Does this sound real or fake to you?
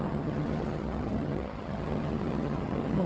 fake